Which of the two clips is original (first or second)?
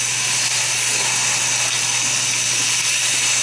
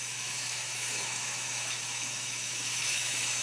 first